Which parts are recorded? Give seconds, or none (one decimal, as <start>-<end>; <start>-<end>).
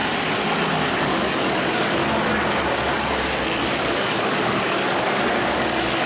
0.0-1.0; 2.0-3.9